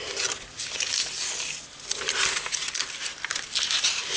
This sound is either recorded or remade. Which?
recorded